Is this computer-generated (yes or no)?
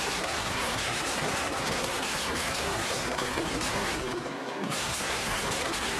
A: yes